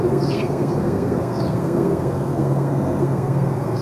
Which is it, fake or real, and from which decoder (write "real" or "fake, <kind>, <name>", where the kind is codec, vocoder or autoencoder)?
fake, codec, SNAC